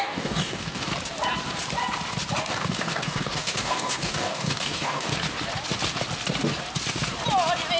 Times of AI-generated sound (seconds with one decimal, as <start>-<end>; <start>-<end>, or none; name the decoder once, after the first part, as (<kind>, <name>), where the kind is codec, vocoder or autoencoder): 0.0-0.9 (codec, DAC); 2.5-5.1